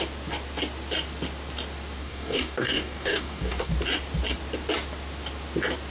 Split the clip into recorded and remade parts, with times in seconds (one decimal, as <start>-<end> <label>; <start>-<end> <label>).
0.0-2.0 recorded; 2.0-3.7 remade; 3.7-5.9 recorded